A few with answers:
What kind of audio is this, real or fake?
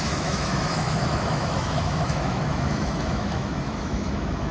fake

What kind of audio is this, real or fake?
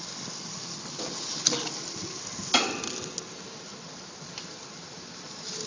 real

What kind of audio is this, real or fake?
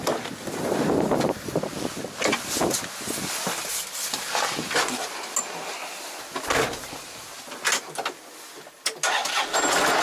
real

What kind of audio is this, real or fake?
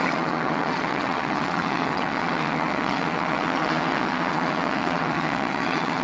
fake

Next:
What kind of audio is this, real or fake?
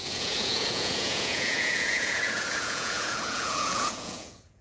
fake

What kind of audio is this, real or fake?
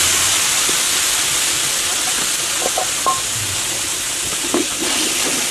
real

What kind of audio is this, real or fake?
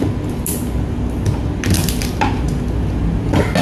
real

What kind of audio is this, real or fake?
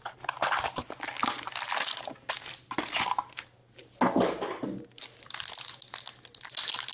real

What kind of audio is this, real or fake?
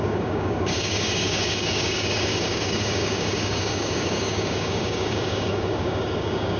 fake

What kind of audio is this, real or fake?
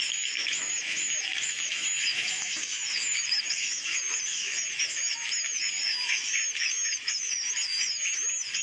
fake